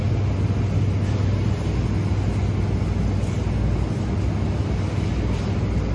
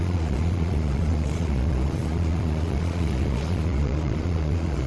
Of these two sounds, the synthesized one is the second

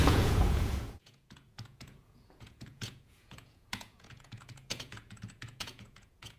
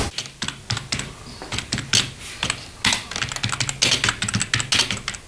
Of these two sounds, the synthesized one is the first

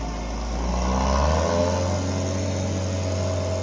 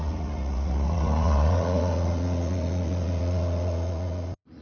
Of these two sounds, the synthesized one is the second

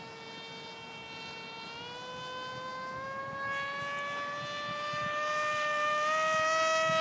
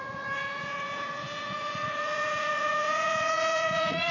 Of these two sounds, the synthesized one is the second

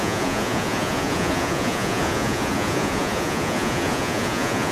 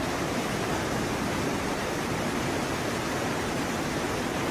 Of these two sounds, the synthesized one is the first